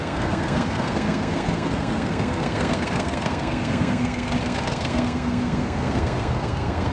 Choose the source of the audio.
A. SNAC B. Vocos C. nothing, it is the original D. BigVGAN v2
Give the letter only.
A